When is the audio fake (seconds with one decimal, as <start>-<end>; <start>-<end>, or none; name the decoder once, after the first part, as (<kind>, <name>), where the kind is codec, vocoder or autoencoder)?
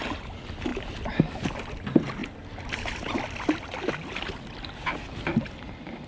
none